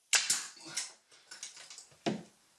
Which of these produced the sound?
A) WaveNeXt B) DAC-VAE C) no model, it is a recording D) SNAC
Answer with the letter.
C